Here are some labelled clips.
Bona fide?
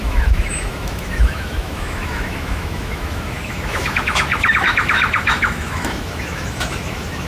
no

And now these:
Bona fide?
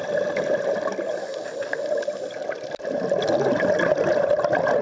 yes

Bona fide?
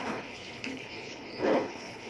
no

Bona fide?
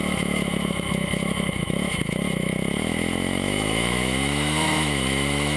no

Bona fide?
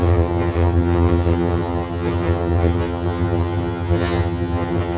no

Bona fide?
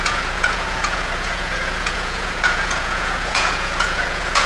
no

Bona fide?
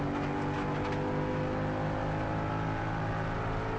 yes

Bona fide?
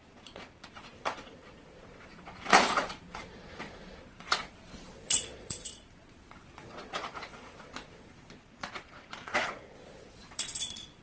no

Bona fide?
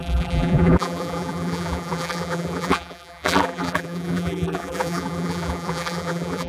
no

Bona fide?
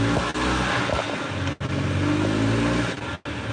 yes